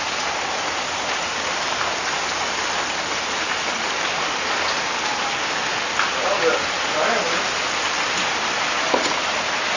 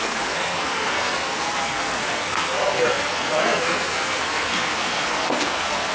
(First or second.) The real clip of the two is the first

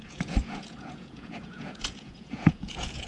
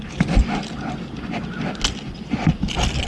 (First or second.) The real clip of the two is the second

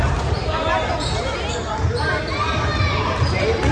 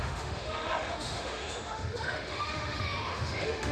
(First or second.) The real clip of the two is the first